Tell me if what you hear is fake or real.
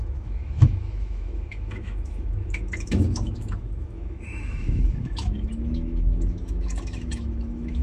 fake